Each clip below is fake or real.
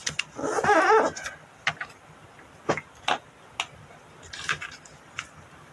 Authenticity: real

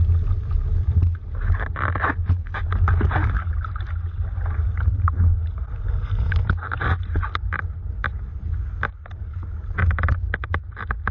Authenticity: real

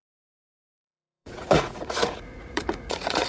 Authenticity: fake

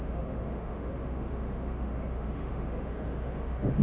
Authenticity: fake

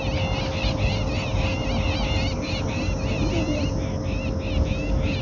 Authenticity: real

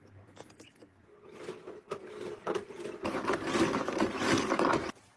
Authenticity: real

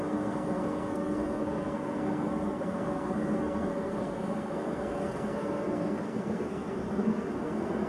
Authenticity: fake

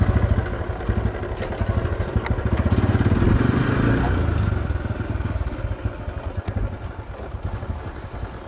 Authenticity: real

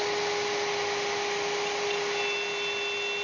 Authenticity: real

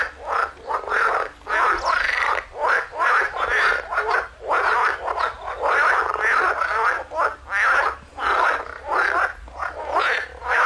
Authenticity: real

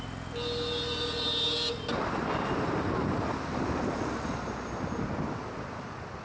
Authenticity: real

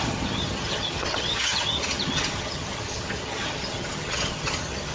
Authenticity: fake